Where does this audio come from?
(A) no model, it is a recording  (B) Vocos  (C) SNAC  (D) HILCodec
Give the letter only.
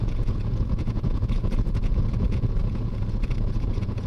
B